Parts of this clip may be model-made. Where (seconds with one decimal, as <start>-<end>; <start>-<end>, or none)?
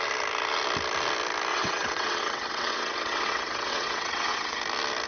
1.5-4.6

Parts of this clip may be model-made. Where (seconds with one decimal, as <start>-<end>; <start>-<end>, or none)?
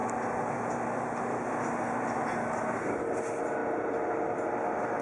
none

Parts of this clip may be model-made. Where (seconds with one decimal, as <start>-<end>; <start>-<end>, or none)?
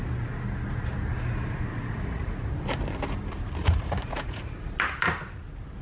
1.7-2.5; 3.6-4.5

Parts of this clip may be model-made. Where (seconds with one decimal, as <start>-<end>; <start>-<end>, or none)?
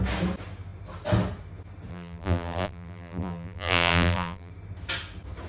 1.9-4.5